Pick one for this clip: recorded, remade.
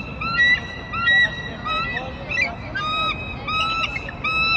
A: recorded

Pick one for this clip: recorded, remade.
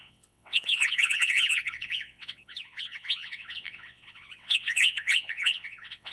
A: remade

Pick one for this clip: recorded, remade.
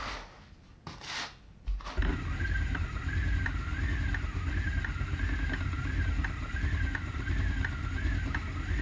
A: recorded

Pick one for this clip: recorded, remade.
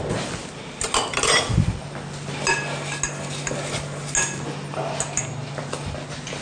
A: recorded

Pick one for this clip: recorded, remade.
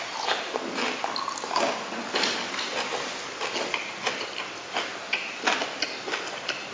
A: recorded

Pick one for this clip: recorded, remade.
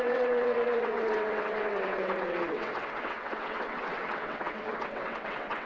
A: remade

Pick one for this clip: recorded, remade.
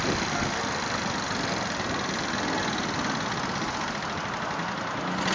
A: recorded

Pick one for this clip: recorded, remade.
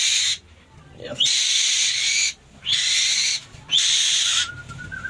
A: recorded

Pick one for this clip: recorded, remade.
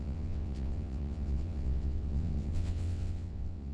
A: remade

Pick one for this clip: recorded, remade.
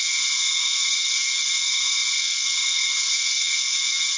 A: remade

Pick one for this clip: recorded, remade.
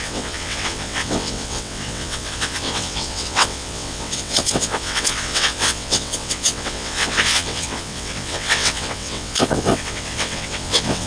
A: remade